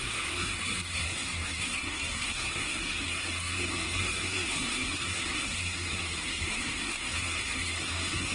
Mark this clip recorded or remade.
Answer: remade